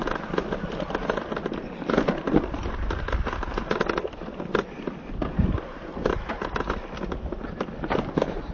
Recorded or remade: recorded